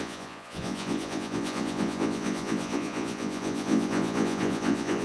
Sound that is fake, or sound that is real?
fake